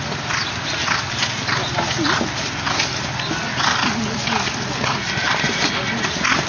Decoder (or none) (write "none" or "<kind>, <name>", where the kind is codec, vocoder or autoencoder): none